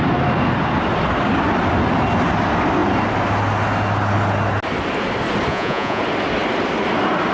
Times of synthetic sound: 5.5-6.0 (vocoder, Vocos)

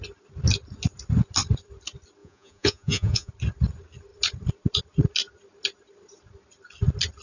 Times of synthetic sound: 2.2-3.3 (vocoder, Vocos)

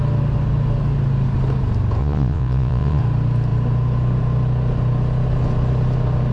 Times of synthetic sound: 2.0-3.0 (vocoder, Vocos)

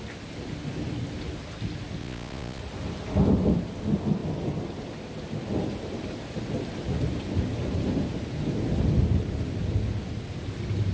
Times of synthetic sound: 2.0-2.6 (vocoder, Vocos)

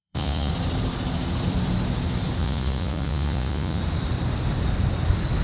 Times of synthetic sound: 0.0-0.5 (vocoder, Vocos); 2.4-3.8

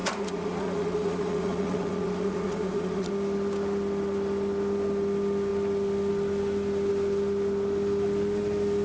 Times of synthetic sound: 0.0-3.1 (vocoder, Vocos)

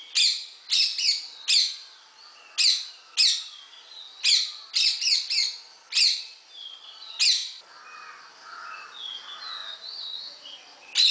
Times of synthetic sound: 9.6-10.6 (vocoder, Vocos)